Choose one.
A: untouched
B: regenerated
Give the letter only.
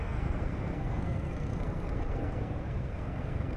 B